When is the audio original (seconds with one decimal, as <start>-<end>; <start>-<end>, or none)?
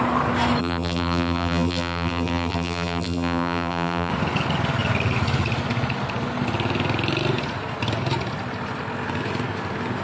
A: 0.0-0.6; 4.1-10.0